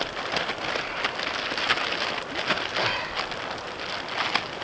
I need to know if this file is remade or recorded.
recorded